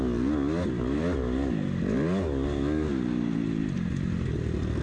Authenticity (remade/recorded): recorded